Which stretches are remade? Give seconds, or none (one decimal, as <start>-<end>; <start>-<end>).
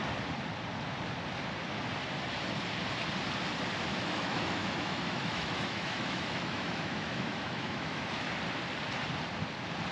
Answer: 3.9-8.3